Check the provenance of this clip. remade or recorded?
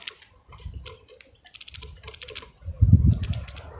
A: recorded